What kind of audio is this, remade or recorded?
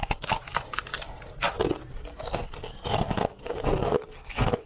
recorded